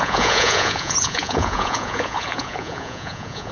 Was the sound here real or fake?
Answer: fake